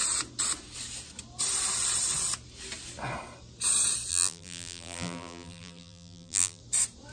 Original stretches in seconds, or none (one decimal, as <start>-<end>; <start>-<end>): 0.0-4.1; 6.6-7.1